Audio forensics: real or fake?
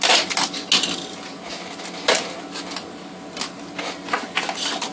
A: real